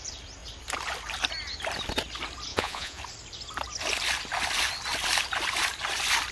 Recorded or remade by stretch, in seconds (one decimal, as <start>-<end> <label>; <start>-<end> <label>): 0.0-2.5 recorded; 2.5-3.0 remade; 3.0-6.3 recorded